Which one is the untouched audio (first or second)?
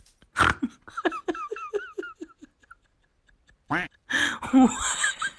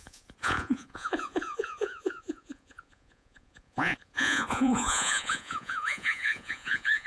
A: first